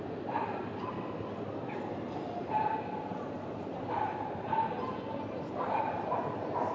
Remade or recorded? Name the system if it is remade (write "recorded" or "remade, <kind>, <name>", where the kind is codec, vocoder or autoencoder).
recorded